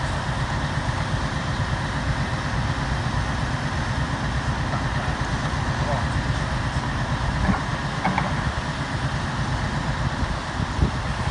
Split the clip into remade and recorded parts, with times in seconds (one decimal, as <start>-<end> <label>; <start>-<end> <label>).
0.0-11.3 recorded